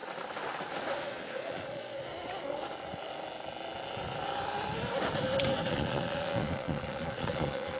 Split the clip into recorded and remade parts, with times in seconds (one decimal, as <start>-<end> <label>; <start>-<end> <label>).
0.0-1.0 recorded; 1.0-2.1 remade; 2.1-5.7 recorded; 5.7-7.8 remade